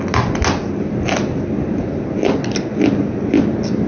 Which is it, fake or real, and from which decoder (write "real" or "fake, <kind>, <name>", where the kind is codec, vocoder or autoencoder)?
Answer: real